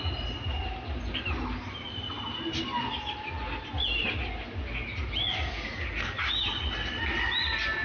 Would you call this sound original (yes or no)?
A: yes